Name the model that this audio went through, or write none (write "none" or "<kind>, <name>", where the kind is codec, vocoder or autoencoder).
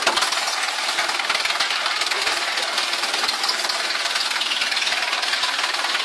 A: none